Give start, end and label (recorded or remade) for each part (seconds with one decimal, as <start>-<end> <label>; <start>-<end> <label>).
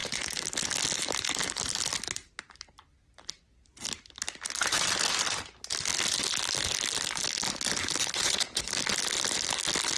0.0-8.0 recorded; 8.0-8.6 remade; 8.6-10.0 recorded